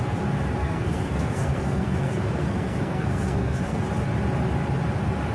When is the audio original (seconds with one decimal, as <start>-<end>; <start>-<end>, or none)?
0.0-0.6; 3.8-5.3